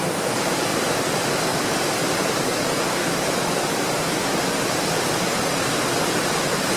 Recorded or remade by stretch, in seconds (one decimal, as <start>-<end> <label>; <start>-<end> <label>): 0.0-1.5 recorded; 1.5-4.4 remade; 4.4-6.8 recorded

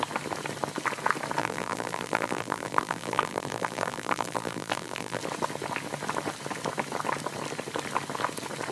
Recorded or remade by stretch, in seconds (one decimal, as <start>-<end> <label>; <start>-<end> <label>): 0.0-1.4 recorded; 1.4-5.2 remade; 5.2-8.7 recorded

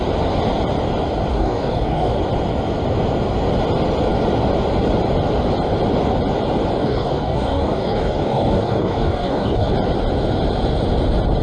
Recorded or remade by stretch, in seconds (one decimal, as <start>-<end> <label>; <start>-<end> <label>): 0.0-1.3 recorded; 1.3-2.2 remade; 2.2-6.8 recorded; 6.8-9.7 remade; 9.7-11.4 recorded

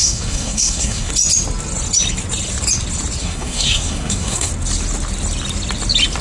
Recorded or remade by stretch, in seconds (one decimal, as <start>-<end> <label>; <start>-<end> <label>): 0.0-1.1 remade; 1.1-3.2 recorded; 3.2-4.5 remade; 4.5-6.2 recorded